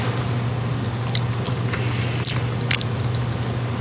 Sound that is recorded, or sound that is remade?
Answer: recorded